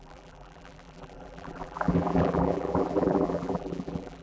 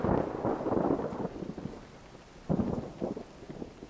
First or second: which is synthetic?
first